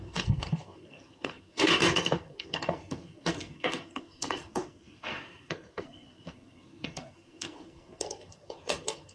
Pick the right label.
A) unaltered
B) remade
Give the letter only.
B